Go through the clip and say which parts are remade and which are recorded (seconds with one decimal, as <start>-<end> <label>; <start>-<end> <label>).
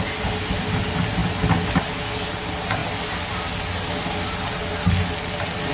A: 0.0-5.7 recorded